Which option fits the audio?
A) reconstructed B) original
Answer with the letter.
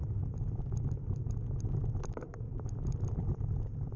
B